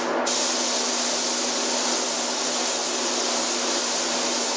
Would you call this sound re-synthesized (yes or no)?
no